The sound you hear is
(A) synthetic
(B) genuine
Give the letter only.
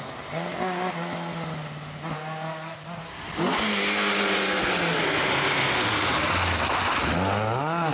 B